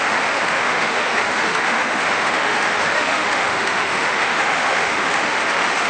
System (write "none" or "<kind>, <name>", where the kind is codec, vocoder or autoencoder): autoencoder, DAC-VAE